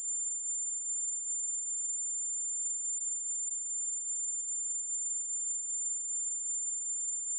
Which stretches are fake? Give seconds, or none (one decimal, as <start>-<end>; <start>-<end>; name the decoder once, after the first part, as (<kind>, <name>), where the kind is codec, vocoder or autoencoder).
0.0-2.0 (codec, DAC); 2.6-7.4